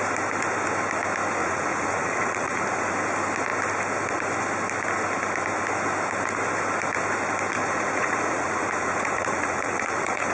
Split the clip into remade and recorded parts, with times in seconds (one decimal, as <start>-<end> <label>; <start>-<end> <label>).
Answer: 0.0-1.4 recorded; 1.4-2.9 remade; 2.9-7.6 recorded; 7.6-10.3 remade